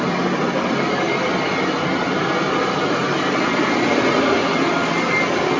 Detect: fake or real fake